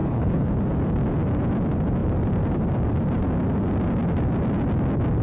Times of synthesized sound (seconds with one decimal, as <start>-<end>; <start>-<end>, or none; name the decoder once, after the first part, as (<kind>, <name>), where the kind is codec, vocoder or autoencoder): 0.0-0.5 (codec, HILCodec)